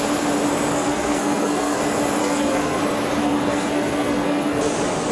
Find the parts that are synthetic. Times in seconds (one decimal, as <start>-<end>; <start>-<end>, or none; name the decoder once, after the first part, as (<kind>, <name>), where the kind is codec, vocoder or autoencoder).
0.7-1.8 (codec, SNAC); 2.2-2.8; 3.2-4.6